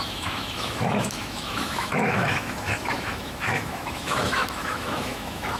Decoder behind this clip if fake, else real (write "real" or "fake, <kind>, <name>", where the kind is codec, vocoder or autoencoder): fake, autoencoder, DAC-VAE